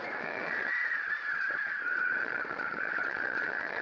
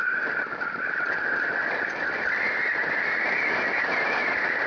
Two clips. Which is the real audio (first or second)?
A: second